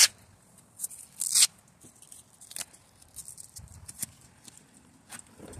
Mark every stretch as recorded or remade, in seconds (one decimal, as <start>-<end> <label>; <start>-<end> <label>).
0.0-3.2 recorded; 3.2-5.6 remade